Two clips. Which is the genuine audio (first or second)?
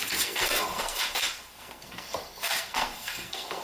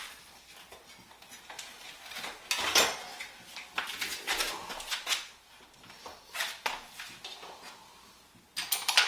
second